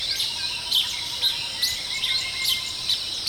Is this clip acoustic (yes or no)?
yes